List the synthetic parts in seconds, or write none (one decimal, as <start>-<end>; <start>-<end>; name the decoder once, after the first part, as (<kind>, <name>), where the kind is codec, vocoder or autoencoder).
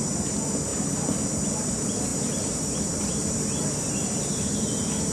none